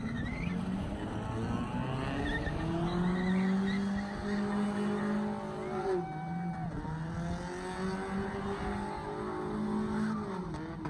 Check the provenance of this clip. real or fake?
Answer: real